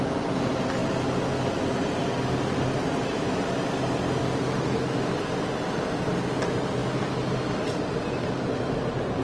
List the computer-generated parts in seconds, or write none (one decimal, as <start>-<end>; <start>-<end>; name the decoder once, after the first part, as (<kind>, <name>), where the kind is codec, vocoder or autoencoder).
none